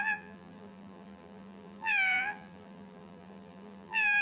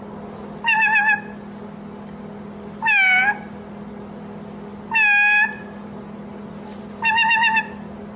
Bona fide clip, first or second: second